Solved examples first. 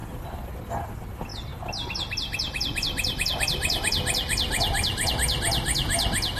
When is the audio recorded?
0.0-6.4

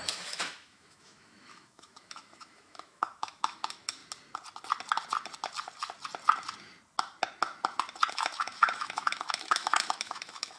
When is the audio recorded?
4.0-8.1